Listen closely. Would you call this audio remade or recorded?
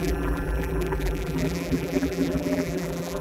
remade